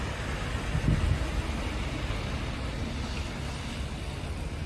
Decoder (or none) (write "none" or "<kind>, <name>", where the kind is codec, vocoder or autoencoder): none